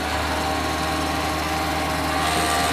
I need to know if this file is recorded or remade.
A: recorded